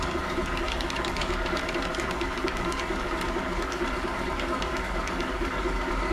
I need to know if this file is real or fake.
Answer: fake